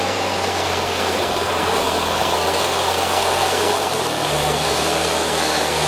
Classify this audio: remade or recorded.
remade